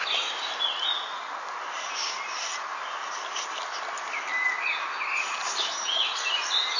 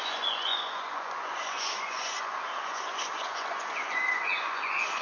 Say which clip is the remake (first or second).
second